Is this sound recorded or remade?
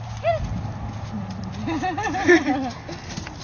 recorded